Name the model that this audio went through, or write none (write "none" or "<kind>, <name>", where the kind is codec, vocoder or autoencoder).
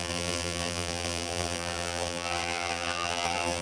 vocoder, BigVGAN v2